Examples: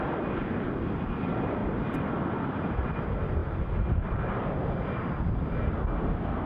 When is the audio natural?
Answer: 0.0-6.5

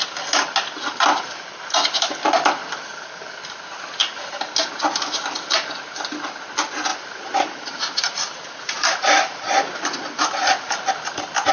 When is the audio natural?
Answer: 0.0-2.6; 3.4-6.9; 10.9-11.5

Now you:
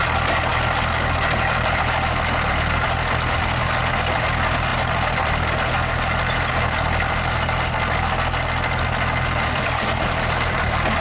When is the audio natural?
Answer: 0.0-9.5; 10.1-11.0

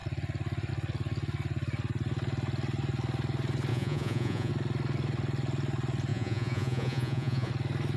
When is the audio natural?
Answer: 0.0-3.7; 4.5-6.1; 7.5-8.0